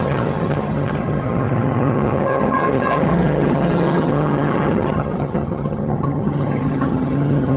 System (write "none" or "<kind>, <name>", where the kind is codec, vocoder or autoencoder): vocoder, HiFi-GAN